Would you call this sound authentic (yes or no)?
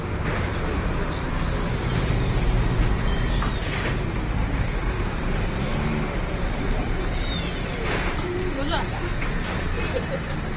no